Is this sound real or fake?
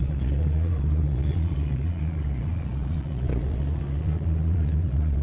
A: fake